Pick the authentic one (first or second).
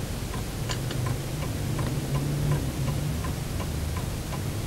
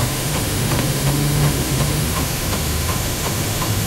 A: first